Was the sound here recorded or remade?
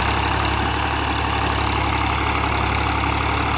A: recorded